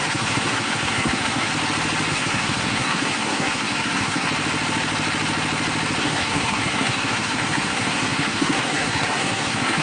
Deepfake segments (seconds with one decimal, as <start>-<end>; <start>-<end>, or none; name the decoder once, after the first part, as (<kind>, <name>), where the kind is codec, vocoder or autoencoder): 0.0-1.5 (codec, SNAC); 2.1-4.3; 6.0-9.8